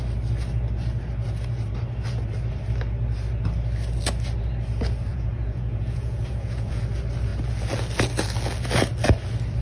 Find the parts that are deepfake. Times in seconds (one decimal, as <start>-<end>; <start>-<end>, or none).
5.1-6.8